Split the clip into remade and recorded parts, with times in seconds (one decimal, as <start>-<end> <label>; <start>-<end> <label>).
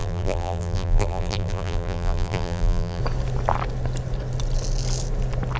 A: 0.0-3.0 remade; 3.0-5.6 recorded